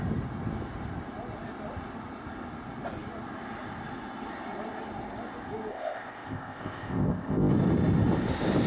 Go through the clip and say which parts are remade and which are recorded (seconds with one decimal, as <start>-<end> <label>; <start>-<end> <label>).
0.0-5.7 recorded; 5.7-7.5 remade; 7.5-8.7 recorded